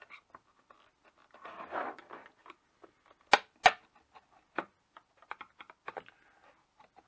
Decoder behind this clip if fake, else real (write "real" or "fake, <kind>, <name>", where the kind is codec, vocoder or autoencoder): real